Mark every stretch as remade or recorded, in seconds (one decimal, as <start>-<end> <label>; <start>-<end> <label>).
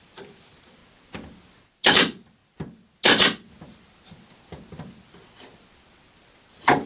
0.0-0.8 remade; 0.8-1.9 recorded; 1.9-2.4 remade; 2.4-6.5 recorded; 6.5-6.9 remade